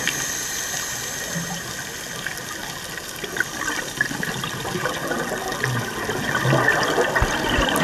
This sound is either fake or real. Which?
real